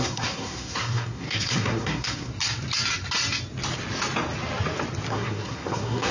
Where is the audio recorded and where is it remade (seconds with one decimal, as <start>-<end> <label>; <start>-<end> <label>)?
0.0-2.3 remade; 2.3-5.1 recorded; 5.1-6.1 remade